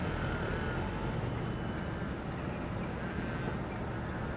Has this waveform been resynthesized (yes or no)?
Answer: no